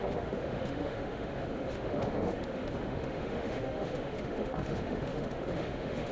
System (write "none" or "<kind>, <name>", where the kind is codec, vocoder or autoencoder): autoencoder, DAC-VAE